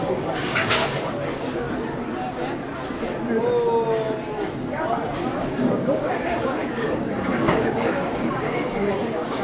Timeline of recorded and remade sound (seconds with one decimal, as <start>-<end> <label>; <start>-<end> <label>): 0.0-0.8 remade; 0.8-5.4 recorded; 5.4-9.4 remade